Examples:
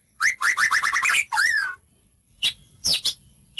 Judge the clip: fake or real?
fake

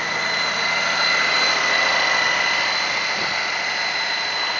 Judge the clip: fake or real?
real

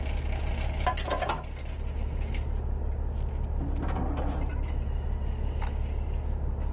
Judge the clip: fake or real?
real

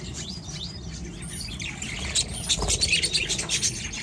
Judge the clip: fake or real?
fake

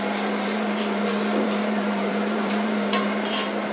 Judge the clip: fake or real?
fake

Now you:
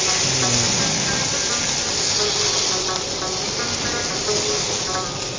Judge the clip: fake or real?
real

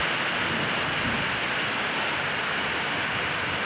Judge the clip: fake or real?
real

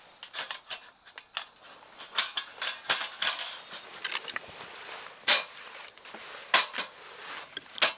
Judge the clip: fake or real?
real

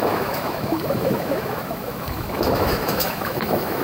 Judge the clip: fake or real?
fake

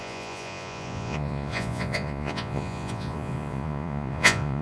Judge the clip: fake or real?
fake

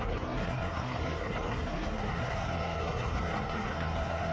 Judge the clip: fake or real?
fake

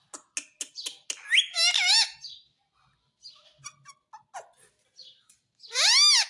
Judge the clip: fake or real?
real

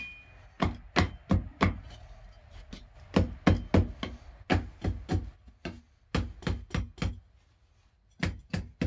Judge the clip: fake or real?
real